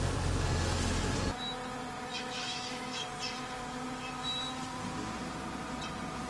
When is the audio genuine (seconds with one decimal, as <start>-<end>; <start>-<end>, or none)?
0.0-2.1; 3.0-6.3